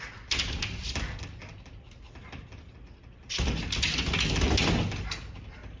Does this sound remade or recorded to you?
recorded